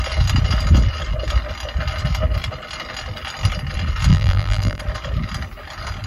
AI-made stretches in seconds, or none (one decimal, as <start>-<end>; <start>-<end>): 4.1-4.8